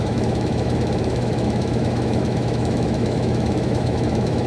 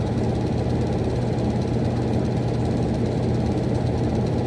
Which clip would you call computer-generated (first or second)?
first